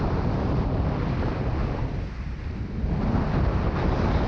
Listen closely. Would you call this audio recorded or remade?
recorded